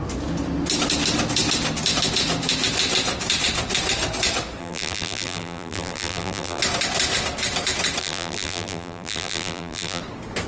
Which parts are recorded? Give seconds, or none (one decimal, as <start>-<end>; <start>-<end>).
0.0-4.6; 6.6-8.0; 10.0-10.5